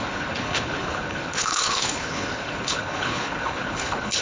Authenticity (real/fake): fake